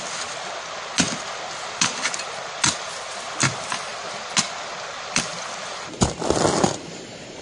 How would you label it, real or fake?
real